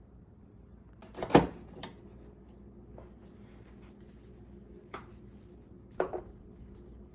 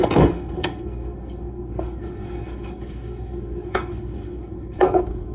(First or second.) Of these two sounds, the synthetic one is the second